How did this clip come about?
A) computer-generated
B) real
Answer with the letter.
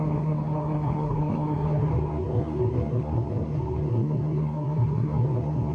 A